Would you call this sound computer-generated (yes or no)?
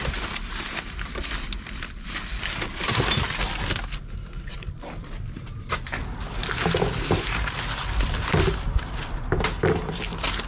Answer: no